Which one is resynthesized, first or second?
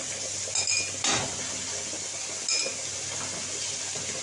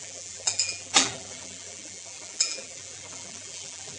second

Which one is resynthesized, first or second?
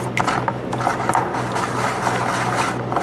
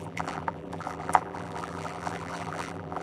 second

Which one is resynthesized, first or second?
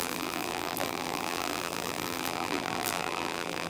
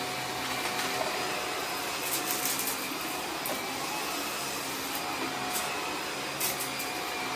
first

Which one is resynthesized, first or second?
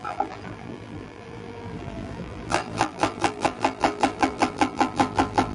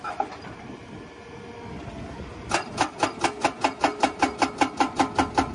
first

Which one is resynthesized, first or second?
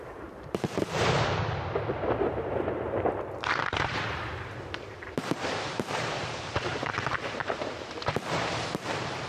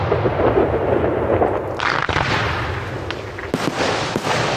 first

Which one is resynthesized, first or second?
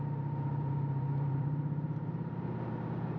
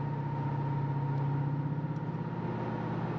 first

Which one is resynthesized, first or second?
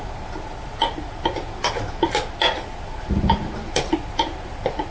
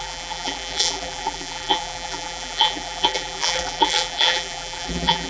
second